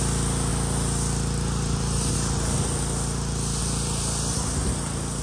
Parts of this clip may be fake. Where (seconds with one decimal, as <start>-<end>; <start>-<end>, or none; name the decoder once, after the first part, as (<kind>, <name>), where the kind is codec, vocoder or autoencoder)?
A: none